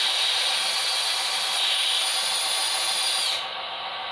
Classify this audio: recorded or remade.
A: recorded